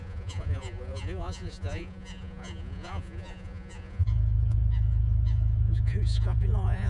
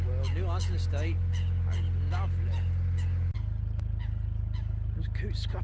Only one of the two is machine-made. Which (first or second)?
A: first